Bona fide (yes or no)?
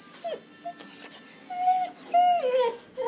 yes